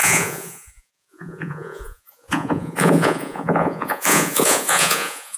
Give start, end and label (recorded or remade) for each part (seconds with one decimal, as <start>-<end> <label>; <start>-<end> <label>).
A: 0.0-5.4 remade